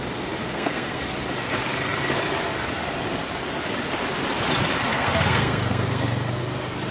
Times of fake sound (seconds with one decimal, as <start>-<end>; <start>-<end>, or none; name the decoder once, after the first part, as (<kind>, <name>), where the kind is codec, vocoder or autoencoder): 0.4-1.0 (codec, SNAC); 4.9-6.4